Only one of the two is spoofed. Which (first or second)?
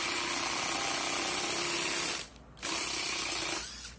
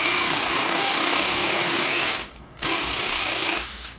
second